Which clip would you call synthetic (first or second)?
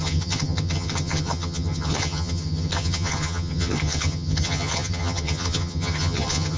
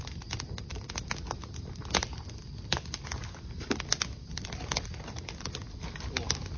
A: first